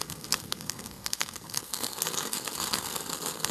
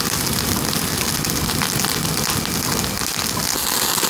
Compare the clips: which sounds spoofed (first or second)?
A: first